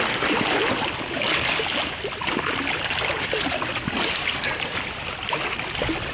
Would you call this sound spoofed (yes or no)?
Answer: no